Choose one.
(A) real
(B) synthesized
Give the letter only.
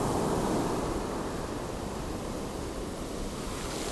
A